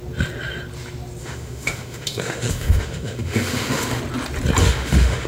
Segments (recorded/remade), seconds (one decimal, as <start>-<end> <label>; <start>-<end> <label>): 0.0-1.2 recorded; 1.2-4.0 remade; 4.0-4.6 recorded; 4.6-5.3 remade